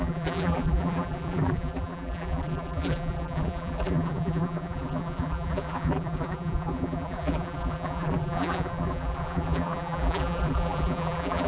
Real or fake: fake